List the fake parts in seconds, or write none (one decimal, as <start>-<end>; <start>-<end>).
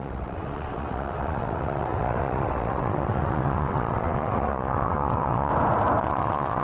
0.0-5.5; 6.0-6.6